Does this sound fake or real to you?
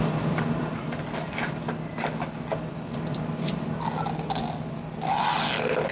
real